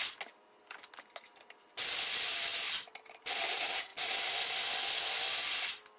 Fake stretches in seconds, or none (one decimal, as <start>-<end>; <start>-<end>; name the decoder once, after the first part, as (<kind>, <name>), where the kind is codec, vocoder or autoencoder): none